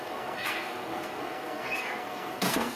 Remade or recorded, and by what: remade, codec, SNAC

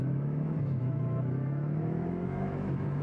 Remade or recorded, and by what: remade, autoencoder, DAC-VAE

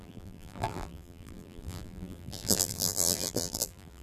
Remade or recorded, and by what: remade, vocoder, BigVGAN v2